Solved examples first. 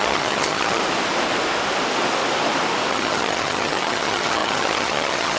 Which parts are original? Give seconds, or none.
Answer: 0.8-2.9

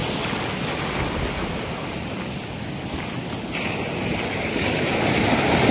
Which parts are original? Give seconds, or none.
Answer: 0.0-5.7

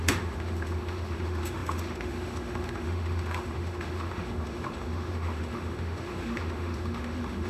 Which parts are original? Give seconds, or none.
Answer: none

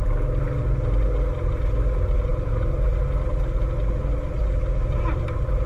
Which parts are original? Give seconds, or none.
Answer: 0.0-5.7

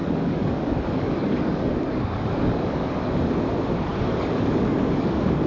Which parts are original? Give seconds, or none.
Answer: 3.3-3.9

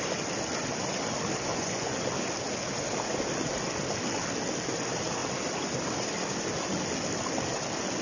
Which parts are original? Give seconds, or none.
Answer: 0.0-1.5; 2.0-8.0